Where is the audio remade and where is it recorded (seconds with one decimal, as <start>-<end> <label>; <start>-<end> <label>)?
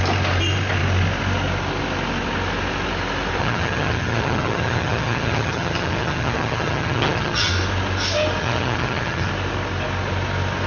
0.0-3.4 recorded; 3.4-7.5 remade; 7.5-8.4 recorded; 8.4-9.3 remade; 9.3-10.7 recorded